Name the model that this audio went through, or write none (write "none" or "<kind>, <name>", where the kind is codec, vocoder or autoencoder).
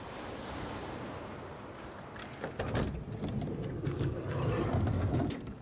none